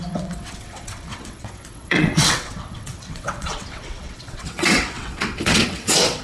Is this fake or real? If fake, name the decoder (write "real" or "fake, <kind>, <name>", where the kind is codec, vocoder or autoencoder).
fake, vocoder, WaveNeXt